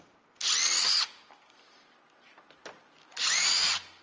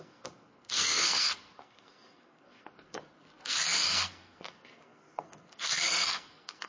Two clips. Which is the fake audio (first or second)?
second